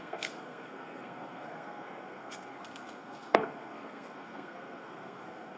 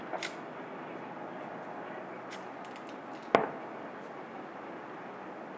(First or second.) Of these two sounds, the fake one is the first